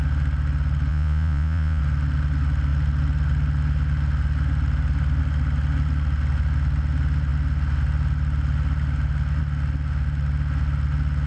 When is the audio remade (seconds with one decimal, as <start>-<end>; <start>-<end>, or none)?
0.9-1.8